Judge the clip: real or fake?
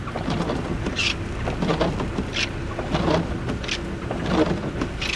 real